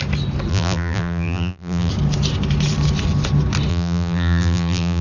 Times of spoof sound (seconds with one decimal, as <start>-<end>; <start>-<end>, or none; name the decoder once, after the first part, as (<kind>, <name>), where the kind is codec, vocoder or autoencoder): 0.5-1.9 (vocoder, BigVGAN v2); 3.7-5.0